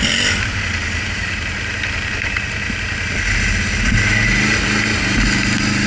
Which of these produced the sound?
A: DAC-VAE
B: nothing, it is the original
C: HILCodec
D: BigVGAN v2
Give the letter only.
B